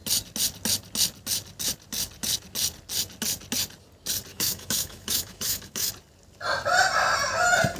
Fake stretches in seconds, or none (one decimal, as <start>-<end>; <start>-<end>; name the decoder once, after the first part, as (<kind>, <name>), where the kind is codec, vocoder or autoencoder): 4.3-5.9 (autoencoder, DAC-VAE)